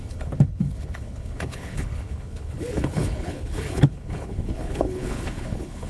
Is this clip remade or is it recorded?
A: remade